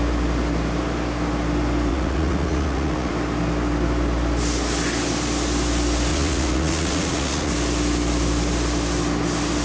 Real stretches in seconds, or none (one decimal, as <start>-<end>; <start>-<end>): 0.0-1.9; 3.1-6.1; 7.5-9.6